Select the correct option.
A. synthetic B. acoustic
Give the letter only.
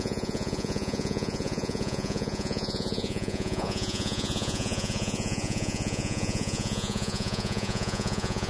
A